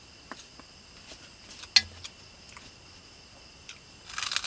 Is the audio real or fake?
real